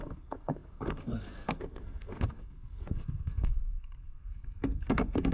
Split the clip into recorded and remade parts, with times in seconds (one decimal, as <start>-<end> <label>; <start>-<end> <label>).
0.0-5.3 remade